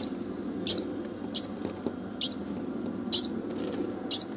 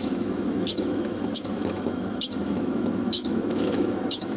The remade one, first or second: second